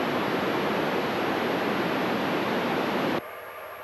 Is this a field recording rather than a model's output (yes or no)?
yes